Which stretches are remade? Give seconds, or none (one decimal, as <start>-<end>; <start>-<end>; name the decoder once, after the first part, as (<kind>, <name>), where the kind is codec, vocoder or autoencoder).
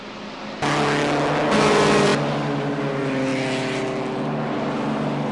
none